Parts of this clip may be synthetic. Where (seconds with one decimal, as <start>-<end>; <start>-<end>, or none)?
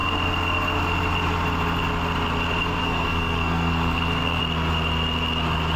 2.8-4.4